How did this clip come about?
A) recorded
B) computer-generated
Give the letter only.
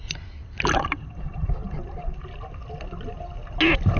A